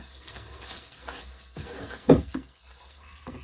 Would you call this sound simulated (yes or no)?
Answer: yes